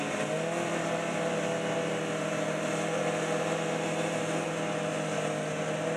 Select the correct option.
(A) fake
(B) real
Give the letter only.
B